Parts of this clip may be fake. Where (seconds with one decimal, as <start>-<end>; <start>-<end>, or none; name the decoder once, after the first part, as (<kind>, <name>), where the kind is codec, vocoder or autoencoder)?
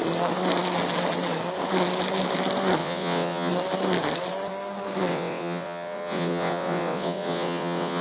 2.8-3.5 (vocoder, WaveNeXt); 5.1-8.0